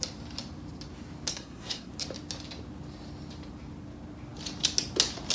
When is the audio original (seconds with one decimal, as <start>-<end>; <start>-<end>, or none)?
0.0-1.3; 1.9-5.3